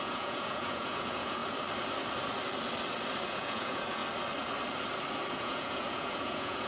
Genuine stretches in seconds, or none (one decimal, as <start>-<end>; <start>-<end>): 1.4-3.3; 4.0-5.3